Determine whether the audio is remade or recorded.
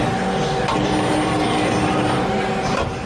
recorded